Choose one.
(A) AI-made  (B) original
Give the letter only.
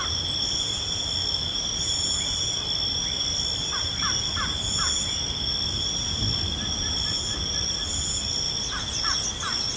B